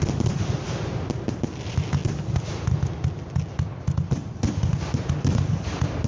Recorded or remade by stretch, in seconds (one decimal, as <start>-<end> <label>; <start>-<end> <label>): 0.0-2.0 remade; 2.0-6.1 recorded